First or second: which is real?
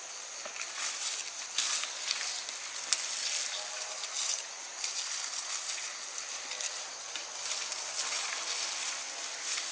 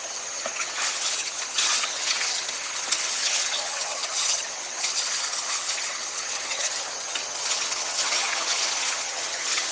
first